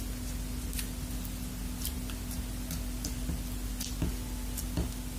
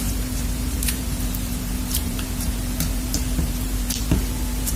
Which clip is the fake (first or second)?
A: second